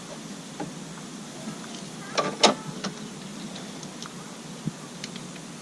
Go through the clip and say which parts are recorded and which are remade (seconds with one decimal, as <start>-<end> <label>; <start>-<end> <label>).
0.0-5.6 recorded